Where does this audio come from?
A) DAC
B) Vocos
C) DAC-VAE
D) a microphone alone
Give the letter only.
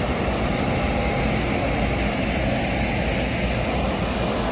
D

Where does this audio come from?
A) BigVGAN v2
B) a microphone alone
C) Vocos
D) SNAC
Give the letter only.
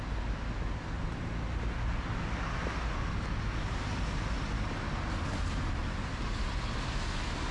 B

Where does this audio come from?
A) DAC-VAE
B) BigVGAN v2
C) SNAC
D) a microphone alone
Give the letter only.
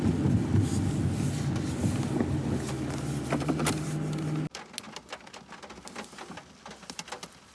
D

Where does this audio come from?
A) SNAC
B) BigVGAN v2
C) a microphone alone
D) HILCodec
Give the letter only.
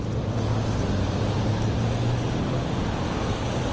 C